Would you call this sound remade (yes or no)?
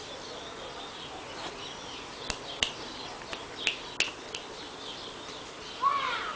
no